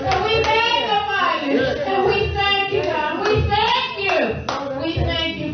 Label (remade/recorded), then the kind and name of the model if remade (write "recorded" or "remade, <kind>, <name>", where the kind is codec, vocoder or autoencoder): recorded